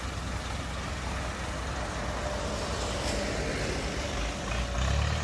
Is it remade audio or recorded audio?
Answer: recorded